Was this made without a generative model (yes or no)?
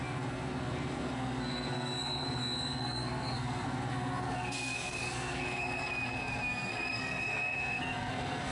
no